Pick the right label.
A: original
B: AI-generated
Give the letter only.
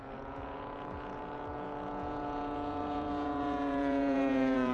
B